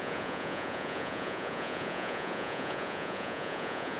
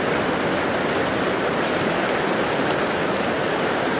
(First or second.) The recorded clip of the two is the second